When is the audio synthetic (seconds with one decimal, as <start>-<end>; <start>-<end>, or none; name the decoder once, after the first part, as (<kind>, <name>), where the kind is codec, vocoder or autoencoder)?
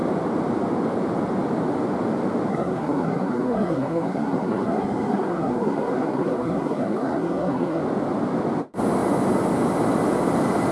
2.5-7.8 (codec, SNAC)